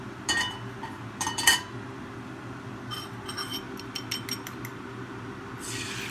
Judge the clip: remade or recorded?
recorded